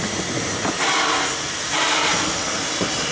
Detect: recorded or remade recorded